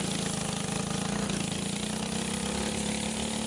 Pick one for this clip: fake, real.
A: real